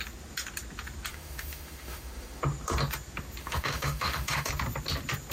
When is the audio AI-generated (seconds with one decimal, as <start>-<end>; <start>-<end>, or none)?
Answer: 1.1-2.4; 3.4-4.5